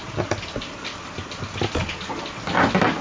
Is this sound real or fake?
real